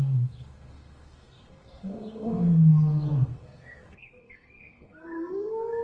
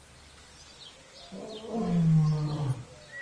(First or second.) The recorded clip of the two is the second